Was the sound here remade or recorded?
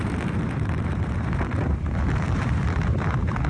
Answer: remade